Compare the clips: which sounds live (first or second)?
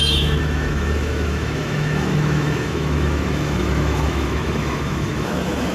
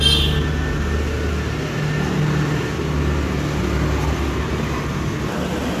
second